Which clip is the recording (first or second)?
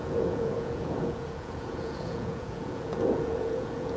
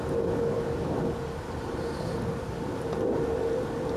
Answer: second